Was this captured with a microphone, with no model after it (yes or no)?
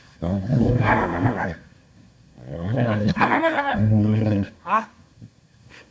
no